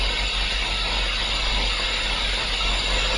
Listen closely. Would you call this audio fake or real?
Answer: real